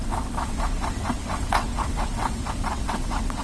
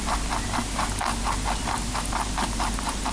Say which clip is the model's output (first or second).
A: first